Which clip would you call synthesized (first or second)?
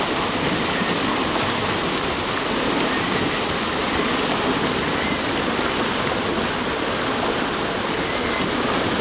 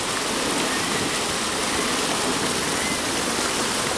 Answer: first